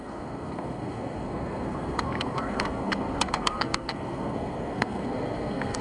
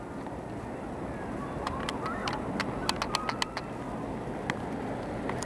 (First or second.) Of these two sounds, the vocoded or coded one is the first